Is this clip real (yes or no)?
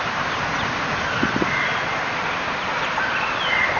yes